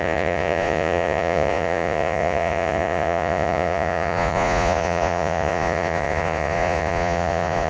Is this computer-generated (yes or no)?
yes